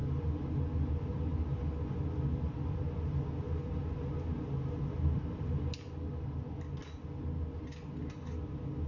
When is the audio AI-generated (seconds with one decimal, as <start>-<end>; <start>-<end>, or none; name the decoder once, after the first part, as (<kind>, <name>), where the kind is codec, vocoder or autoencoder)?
none

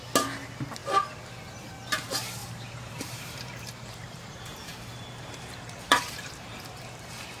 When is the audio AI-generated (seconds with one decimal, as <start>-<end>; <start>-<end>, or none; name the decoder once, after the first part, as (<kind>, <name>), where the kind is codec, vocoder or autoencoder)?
2.4-6.8 (vocoder, BigVGAN v2)

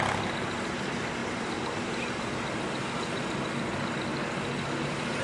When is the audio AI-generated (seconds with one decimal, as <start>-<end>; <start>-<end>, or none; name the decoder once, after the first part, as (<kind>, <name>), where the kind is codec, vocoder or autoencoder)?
1.2-2.3 (vocoder, BigVGAN v2)

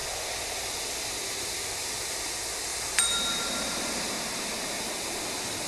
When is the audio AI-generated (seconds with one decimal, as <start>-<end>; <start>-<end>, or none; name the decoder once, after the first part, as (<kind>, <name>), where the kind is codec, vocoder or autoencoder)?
2.7-4.1 (vocoder, BigVGAN v2)